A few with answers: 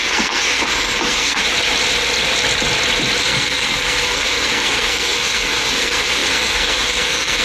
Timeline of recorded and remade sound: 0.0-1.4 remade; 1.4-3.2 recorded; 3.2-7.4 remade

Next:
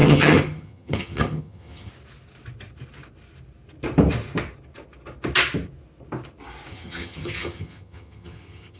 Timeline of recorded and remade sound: 0.0-1.9 remade; 1.9-6.7 recorded; 6.7-8.8 remade

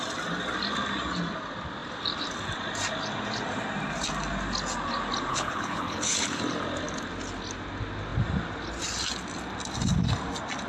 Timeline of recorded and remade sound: 0.0-5.3 recorded; 5.3-6.4 remade; 6.4-10.7 recorded

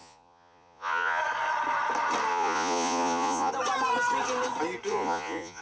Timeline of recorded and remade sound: 0.0-1.2 remade; 1.2-2.3 recorded; 2.3-3.5 remade; 3.5-4.9 recorded; 4.9-5.6 remade

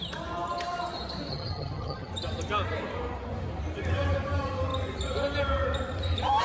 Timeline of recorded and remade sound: 0.0-1.3 recorded; 1.3-2.1 remade; 2.1-6.4 recorded